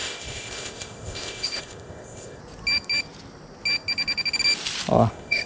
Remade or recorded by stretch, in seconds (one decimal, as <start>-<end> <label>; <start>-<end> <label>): 0.0-2.4 remade; 2.4-5.1 recorded; 5.1-5.5 remade